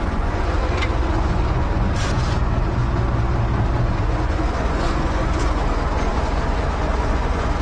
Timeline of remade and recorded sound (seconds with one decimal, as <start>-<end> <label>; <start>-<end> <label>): 0.0-2.8 remade; 2.8-3.8 recorded; 3.8-7.6 remade

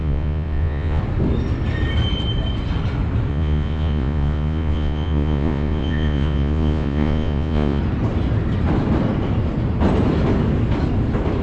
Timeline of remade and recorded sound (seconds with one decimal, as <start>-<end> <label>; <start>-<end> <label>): 0.0-1.0 remade; 1.0-3.3 recorded; 3.3-7.8 remade; 7.8-11.4 recorded

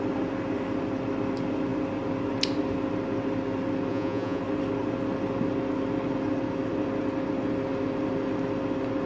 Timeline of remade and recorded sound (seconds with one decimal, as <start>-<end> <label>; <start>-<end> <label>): 0.0-3.9 recorded; 3.9-4.4 remade; 4.4-9.1 recorded

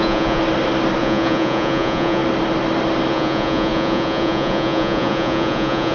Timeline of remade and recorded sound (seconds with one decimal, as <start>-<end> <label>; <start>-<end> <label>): 0.0-0.4 remade; 0.4-1.0 recorded; 1.0-2.2 remade; 2.2-3.1 recorded; 3.1-5.9 remade

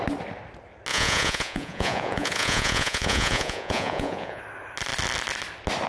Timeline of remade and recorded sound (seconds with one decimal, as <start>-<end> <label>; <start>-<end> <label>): 0.0-0.9 recorded; 0.9-4.4 remade; 4.4-5.9 recorded